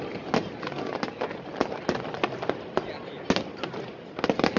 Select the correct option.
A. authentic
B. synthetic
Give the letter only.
A